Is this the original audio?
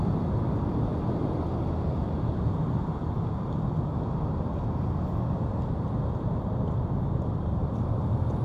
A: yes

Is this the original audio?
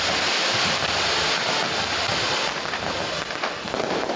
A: yes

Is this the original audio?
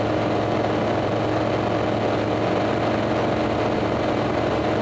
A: yes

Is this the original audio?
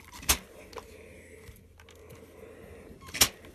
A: yes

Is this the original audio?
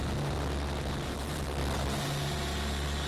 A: yes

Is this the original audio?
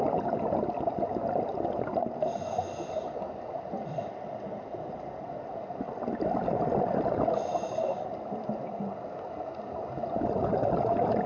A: yes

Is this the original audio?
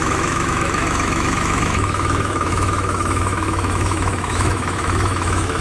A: no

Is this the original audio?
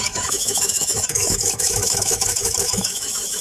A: no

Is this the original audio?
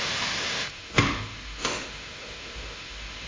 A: no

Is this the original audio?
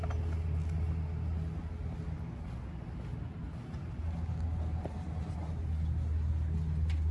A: yes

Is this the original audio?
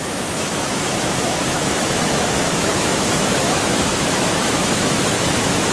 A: no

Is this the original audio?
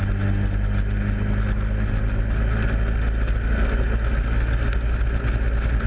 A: yes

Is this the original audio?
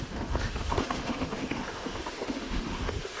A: no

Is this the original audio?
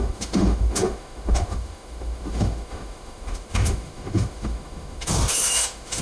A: no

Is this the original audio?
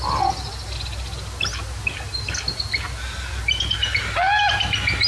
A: yes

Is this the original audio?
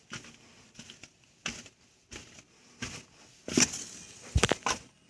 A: yes